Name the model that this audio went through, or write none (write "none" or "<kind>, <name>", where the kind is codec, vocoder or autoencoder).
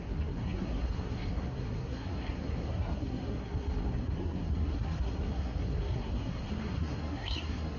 codec, SNAC